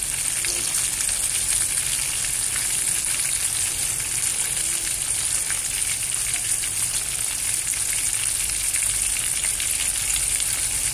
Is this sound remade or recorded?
recorded